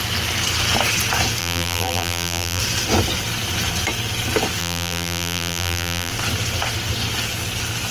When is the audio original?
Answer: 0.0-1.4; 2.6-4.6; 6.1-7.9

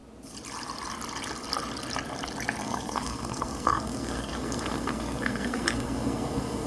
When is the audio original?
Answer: 0.0-2.6

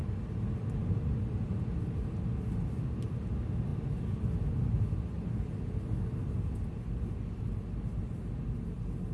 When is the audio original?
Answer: 0.0-9.1

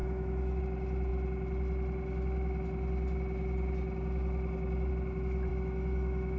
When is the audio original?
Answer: 0.6-5.5

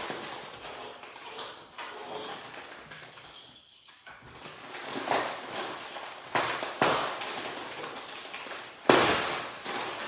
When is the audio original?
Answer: 0.0-2.3; 5.7-10.1

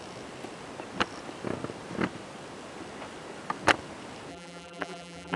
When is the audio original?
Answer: 0.0-4.3